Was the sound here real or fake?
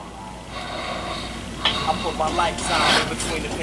real